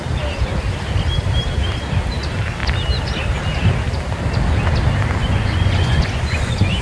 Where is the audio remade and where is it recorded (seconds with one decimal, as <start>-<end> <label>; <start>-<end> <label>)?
0.0-5.2 recorded; 5.2-6.8 remade